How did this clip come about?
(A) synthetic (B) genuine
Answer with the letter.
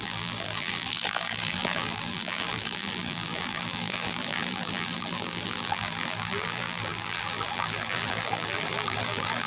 A